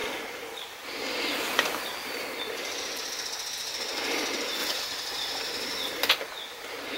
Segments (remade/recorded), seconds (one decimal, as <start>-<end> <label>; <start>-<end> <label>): 0.0-2.4 remade; 2.4-4.6 recorded; 4.6-6.1 remade; 6.1-7.0 recorded